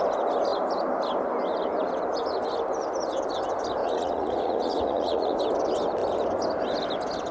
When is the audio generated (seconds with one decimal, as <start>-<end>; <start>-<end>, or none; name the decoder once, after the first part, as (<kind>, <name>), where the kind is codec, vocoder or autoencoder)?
3.8-5.4 (vocoder, Vocos)